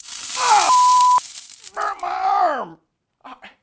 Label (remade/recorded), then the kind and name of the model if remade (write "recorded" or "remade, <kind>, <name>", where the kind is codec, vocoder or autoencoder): remade, vocoder, BigVGAN v2